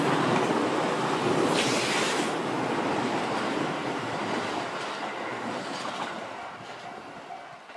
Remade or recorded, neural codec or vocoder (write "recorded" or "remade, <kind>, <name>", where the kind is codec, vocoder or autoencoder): recorded